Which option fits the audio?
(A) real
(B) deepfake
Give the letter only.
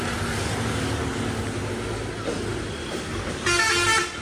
A